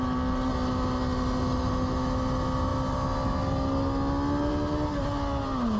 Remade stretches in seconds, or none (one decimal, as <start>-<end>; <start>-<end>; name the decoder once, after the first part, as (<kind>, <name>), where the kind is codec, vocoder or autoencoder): none